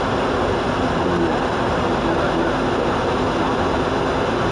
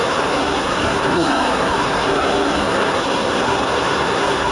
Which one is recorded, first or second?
first